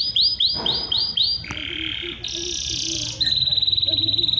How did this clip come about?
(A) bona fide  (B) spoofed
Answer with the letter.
A